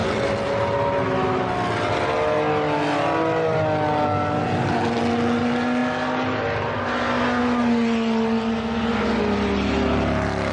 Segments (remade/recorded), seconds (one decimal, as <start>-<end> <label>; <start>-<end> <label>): 0.0-10.5 recorded